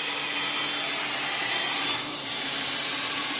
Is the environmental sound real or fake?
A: real